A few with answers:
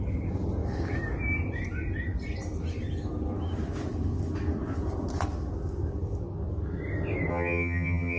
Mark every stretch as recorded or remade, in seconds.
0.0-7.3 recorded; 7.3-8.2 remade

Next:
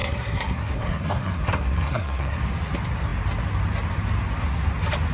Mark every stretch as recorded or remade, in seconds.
0.0-2.4 remade; 2.4-5.1 recorded